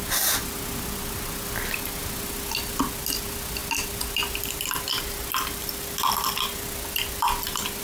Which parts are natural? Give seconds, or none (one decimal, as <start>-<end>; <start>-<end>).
0.0-7.8